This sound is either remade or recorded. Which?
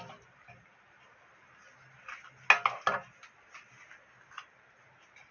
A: recorded